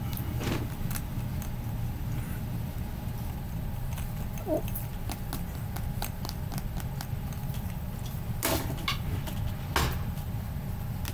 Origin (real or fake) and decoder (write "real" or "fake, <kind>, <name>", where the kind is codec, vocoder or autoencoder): real